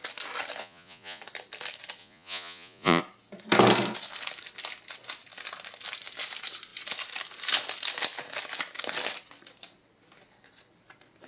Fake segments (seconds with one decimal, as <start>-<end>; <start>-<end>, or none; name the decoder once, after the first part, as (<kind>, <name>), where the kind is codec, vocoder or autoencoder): 0.6-1.2 (vocoder, Vocos); 2.0-3.0